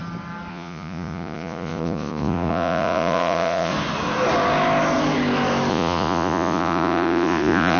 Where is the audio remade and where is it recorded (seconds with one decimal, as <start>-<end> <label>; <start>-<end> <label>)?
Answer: 0.0-0.5 recorded; 0.5-3.7 remade; 3.7-5.7 recorded; 5.7-7.8 remade